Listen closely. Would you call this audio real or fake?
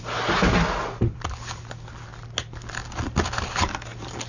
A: real